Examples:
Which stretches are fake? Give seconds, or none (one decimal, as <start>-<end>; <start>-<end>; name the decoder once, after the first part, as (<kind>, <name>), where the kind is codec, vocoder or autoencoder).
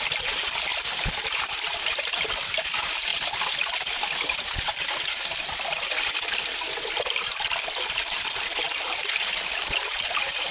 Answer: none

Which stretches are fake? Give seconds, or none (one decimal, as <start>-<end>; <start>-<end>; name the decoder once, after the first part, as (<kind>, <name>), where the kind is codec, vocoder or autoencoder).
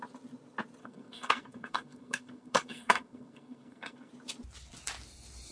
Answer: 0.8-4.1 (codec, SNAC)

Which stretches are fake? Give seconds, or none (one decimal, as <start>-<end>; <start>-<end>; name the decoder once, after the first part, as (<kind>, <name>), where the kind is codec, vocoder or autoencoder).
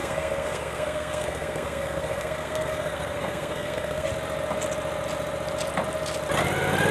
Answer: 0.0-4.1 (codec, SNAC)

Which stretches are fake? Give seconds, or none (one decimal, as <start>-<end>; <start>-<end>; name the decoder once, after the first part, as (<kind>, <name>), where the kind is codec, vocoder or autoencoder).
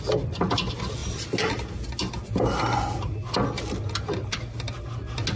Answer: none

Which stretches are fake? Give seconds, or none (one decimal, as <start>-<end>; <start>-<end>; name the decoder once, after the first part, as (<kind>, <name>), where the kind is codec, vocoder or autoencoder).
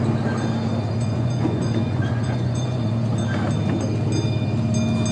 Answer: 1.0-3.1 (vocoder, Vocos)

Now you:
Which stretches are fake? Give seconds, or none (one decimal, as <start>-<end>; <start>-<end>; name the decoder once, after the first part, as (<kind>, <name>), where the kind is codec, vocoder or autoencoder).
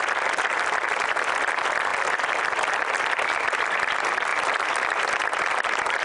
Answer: none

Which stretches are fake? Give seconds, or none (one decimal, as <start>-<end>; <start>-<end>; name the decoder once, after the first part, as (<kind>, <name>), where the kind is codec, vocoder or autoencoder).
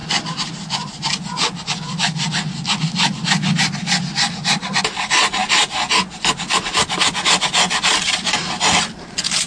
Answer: none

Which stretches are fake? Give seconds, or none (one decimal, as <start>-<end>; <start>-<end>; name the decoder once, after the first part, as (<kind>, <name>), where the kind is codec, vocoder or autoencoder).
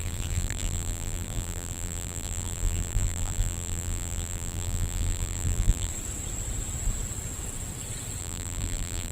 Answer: 0.0-5.9 (vocoder, BigVGAN v2); 8.2-9.1